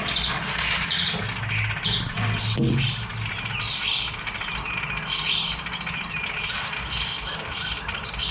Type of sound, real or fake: real